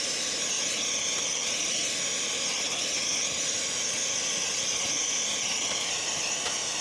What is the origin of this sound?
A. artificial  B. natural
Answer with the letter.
B